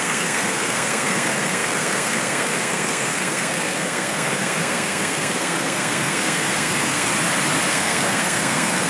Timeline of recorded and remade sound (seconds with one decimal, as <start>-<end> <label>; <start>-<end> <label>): 0.0-7.1 remade; 7.1-7.7 recorded; 7.7-8.9 remade